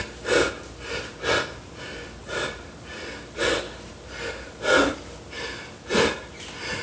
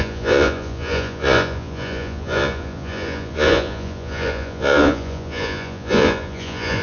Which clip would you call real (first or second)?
first